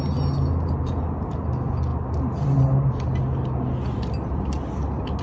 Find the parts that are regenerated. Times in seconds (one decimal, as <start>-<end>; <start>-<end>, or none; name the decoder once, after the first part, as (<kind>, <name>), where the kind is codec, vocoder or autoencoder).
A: none

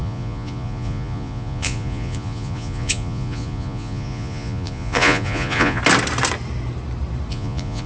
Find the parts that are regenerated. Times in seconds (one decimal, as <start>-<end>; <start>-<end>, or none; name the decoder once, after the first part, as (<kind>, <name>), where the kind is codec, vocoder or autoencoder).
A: 0.0-5.8 (vocoder, Vocos); 7.3-7.9

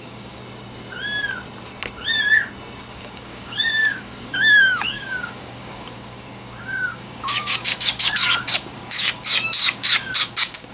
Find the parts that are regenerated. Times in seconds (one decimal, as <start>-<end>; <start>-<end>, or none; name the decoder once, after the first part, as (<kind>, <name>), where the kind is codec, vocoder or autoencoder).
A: 0.0-0.4 (codec, DAC); 2.9-10.7

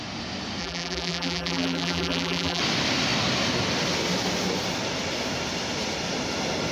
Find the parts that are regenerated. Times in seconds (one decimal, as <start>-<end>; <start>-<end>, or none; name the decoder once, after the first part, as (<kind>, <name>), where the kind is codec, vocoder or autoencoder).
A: 0.6-2.6 (vocoder, BigVGAN v2)

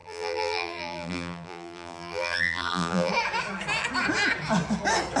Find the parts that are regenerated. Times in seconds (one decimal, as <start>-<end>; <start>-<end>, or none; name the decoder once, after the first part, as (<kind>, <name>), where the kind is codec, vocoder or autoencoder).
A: 0.0-3.1 (vocoder, BigVGAN v2)

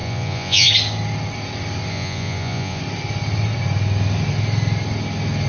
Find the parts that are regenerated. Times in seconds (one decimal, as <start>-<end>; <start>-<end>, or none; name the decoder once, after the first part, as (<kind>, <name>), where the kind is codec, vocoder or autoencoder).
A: 0.0-0.7 (vocoder, Vocos); 1.9-2.8

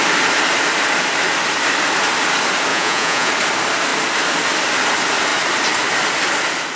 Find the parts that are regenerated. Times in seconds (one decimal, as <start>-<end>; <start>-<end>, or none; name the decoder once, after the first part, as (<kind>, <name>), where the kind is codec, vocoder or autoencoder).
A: 2.7-3.3 (vocoder, Vocos)